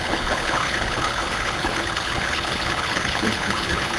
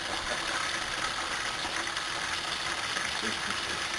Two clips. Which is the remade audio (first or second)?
first